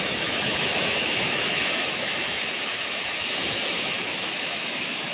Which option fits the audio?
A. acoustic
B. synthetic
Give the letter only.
B